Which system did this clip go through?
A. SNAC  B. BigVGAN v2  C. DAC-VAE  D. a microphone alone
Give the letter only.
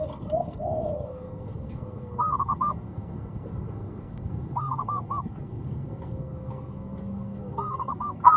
A